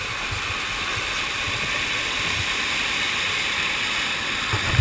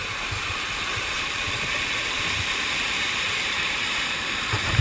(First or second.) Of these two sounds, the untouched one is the first